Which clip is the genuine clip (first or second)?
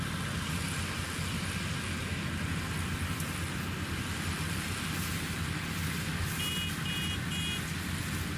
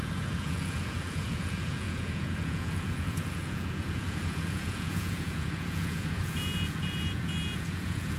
first